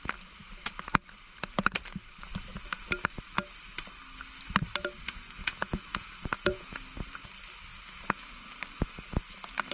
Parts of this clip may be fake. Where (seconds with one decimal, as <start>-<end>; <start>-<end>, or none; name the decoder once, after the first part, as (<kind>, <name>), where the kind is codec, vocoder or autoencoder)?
5.4-6.8 (vocoder, Vocos); 7.7-8.3